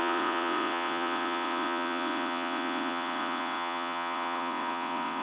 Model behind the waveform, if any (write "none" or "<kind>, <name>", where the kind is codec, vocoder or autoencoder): vocoder, WaveNeXt